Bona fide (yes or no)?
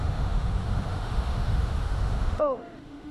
no